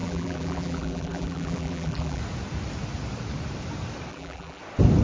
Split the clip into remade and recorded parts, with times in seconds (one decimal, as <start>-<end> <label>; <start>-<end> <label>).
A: 0.0-2.2 remade; 2.2-4.1 recorded; 4.1-4.6 remade; 4.6-5.0 recorded